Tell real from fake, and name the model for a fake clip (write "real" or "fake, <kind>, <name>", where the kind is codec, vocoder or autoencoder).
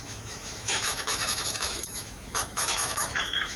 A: fake, autoencoder, DAC-VAE